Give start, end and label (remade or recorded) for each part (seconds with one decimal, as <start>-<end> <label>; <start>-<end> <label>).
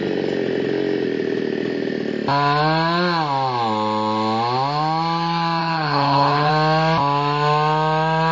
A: 0.0-5.6 recorded; 5.6-6.5 remade; 6.5-8.3 recorded